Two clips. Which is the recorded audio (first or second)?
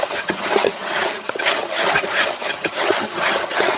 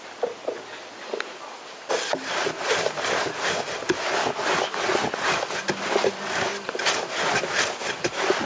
second